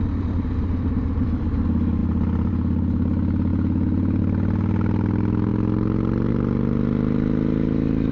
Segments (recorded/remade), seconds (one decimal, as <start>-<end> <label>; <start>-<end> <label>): 0.0-3.5 recorded; 3.5-4.2 remade; 4.2-8.1 recorded